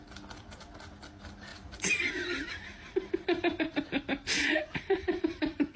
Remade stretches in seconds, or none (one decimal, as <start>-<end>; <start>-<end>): 1.5-2.5; 4.4-5.8